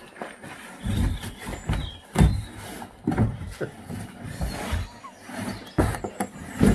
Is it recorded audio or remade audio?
recorded